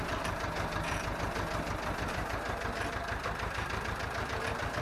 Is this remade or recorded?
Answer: remade